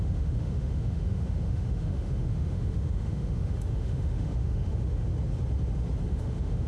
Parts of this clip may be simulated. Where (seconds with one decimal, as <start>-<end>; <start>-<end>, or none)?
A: 0.0-5.1; 6.1-6.7